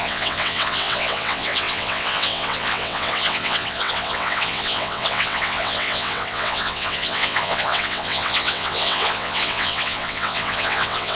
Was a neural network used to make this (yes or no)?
yes